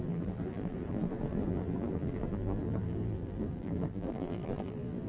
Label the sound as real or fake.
fake